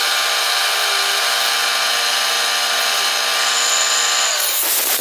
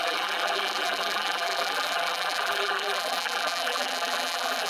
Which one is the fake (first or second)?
second